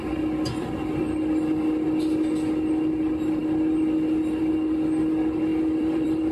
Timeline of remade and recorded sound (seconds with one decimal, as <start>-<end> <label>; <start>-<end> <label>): 0.0-5.5 recorded; 5.5-6.3 remade